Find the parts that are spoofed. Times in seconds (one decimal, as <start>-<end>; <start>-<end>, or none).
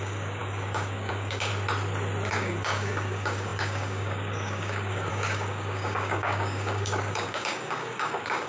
0.0-1.5; 2.3-8.5